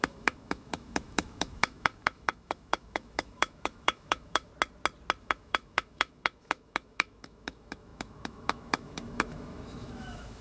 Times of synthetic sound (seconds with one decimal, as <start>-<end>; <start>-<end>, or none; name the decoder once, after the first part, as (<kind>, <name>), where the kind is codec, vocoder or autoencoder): 0.0-4.5 (autoencoder, DAC-VAE); 5.2-10.4